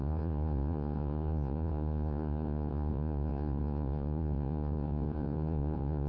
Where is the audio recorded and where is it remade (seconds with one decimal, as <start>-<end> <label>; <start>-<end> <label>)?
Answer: 0.0-6.1 remade